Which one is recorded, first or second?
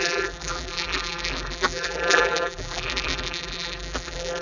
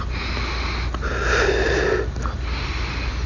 second